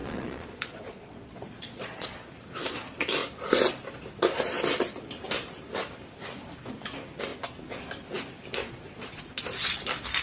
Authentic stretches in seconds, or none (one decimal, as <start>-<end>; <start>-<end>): 2.4-8.6; 9.7-10.2

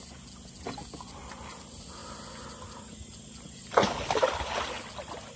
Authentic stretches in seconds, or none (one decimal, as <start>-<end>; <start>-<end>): 0.0-5.4

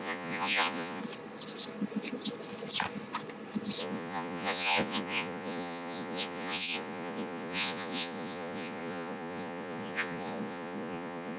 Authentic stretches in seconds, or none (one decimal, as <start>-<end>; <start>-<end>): 1.0-3.8

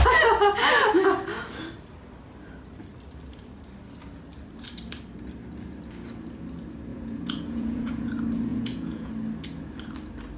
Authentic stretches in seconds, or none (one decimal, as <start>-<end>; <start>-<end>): 0.0-6.9; 8.1-8.5; 9.1-10.4